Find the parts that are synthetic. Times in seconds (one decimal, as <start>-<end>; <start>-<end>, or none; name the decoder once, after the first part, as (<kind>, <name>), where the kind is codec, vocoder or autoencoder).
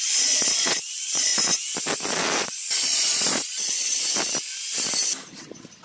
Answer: 0.0-1.3 (vocoder, Vocos); 2.4-3.9